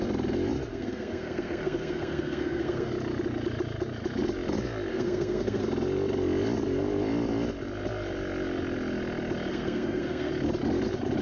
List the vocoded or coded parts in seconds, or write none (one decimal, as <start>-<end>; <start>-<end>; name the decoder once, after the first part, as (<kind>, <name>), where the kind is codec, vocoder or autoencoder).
0.7-2.9 (codec, SNAC); 4.9-5.6; 9.5-10.3